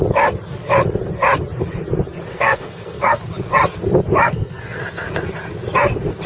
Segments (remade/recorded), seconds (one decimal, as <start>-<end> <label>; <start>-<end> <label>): 0.0-2.3 recorded; 2.3-3.2 remade; 3.2-4.2 recorded; 4.2-4.8 remade; 4.8-6.3 recorded